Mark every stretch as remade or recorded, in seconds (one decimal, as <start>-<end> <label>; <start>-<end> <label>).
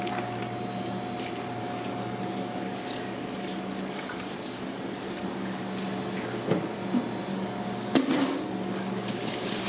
0.0-1.6 recorded; 1.6-5.6 remade; 5.6-7.3 recorded; 7.3-9.7 remade